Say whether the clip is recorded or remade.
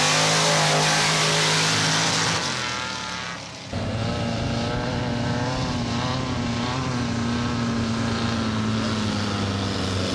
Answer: recorded